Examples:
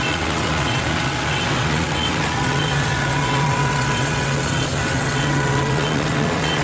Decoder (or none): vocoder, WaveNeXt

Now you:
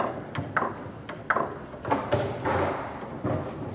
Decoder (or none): none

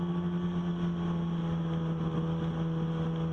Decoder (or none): none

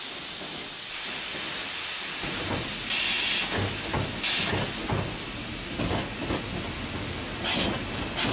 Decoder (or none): none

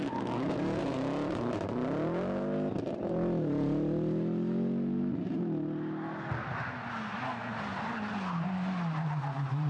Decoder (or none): none